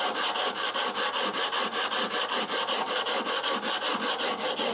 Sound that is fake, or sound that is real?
real